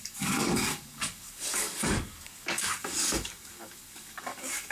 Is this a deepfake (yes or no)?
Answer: yes